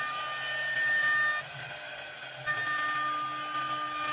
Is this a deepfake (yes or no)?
no